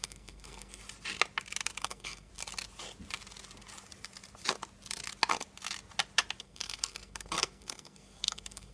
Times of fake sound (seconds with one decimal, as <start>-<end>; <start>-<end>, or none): 0.0-0.8; 1.8-2.3; 6.4-8.7